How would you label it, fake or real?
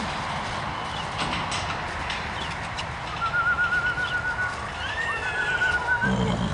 real